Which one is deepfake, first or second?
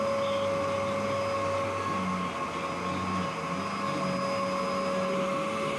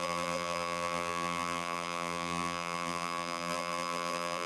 second